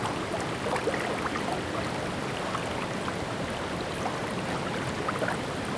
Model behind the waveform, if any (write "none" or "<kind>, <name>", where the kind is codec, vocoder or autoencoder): none